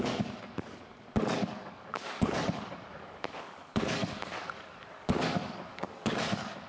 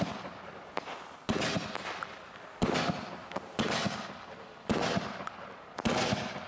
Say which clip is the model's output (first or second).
first